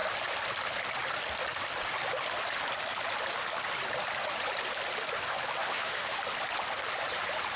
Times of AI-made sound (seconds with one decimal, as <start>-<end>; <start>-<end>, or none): 5.6-6.2